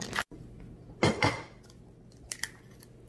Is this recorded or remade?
recorded